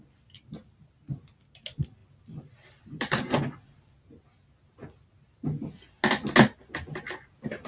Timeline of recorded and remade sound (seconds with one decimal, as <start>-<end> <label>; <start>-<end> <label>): 0.0-2.0 recorded; 2.0-3.2 remade; 3.2-7.7 recorded